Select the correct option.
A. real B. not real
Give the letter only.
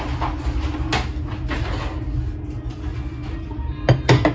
A